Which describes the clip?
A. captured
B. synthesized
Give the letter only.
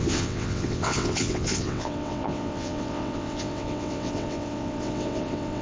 B